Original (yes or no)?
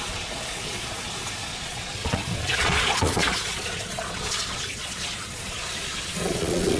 no